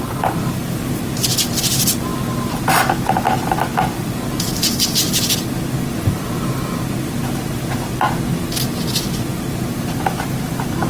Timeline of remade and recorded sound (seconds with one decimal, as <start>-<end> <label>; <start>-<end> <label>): 0.0-10.9 recorded